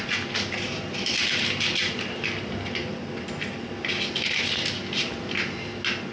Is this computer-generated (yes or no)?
no